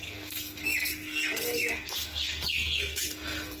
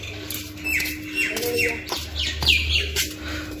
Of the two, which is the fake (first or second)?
first